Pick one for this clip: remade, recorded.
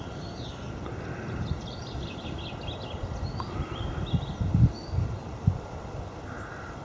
recorded